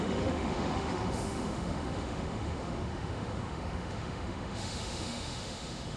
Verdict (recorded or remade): remade